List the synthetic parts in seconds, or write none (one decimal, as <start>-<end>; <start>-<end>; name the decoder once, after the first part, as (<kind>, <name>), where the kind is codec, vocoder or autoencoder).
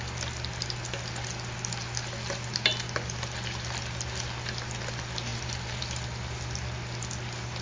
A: none